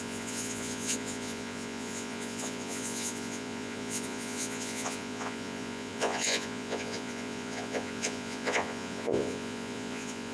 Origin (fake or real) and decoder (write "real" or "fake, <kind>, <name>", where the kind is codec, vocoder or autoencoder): fake, vocoder, Vocos